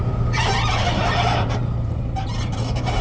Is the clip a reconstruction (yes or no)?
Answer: yes